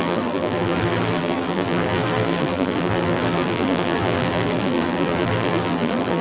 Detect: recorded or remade remade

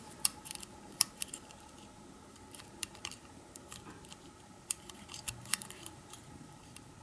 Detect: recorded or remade remade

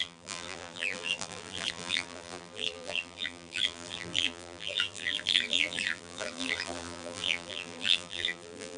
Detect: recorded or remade remade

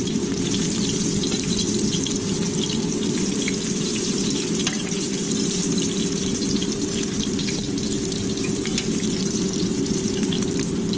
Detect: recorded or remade remade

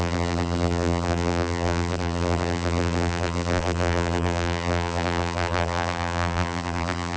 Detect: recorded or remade remade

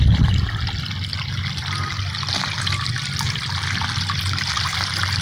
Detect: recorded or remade recorded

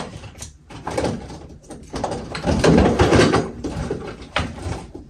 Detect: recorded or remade remade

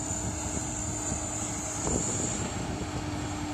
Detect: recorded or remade recorded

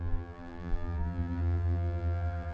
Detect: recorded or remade remade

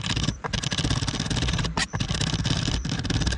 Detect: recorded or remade remade